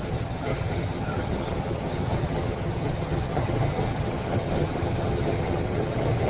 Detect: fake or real fake